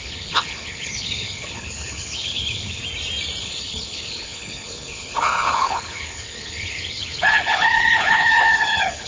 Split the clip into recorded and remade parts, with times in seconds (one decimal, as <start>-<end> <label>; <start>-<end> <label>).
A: 0.0-2.8 remade; 2.8-3.4 recorded; 3.4-9.1 remade